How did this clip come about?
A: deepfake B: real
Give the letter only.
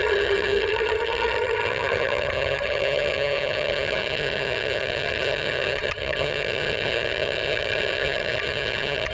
A